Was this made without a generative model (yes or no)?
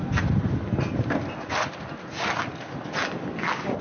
yes